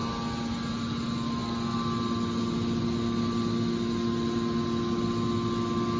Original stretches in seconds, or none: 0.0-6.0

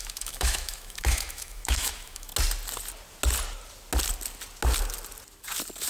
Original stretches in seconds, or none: 2.3-5.9

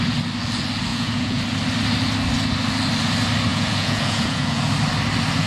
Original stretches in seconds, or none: 0.0-0.9; 1.4-3.5; 4.6-5.5

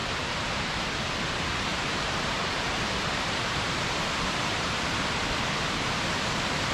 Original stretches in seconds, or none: 0.9-1.7; 4.9-6.7

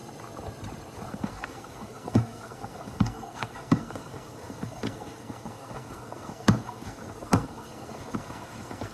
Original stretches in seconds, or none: 0.0-1.1

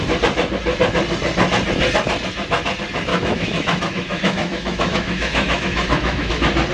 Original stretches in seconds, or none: 0.0-3.1; 6.3-6.7

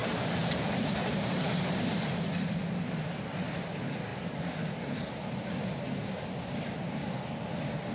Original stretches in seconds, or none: 2.3-7.9